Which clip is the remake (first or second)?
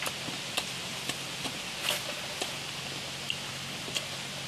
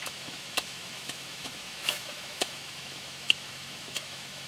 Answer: second